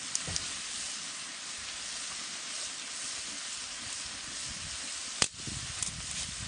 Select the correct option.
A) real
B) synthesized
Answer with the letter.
A